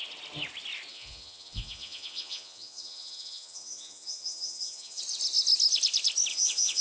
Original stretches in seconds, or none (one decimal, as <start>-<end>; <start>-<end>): 0.0-0.9; 5.0-6.3